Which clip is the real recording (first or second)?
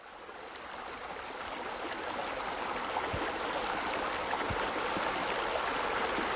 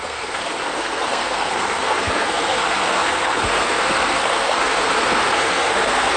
first